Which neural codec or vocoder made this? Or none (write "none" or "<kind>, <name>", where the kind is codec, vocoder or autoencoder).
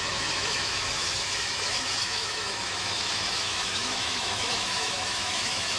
autoencoder, DAC-VAE